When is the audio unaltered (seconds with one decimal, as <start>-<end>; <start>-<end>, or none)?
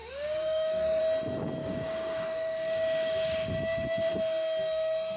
1.0-1.6; 4.1-5.2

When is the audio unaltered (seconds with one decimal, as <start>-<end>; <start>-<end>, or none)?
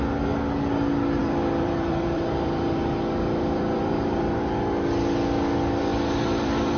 0.0-1.2; 4.2-5.9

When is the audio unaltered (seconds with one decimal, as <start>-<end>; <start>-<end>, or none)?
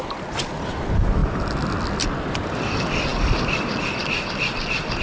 0.0-5.0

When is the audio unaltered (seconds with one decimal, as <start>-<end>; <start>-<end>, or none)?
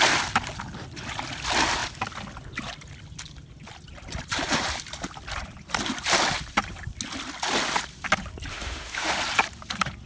0.0-8.5; 9.1-10.1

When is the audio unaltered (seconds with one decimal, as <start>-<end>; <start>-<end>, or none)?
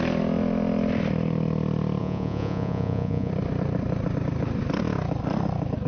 0.0-2.0; 3.3-5.9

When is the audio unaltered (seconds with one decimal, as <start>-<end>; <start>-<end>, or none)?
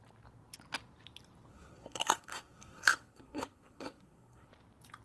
0.0-1.5; 4.5-5.0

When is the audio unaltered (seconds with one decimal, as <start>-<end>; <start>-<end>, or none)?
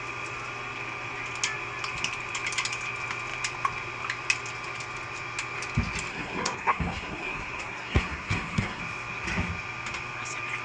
0.0-6.1; 8.8-10.6